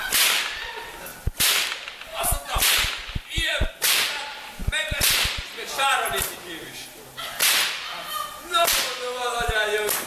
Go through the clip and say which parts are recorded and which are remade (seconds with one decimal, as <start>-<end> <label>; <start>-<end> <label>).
0.0-10.1 recorded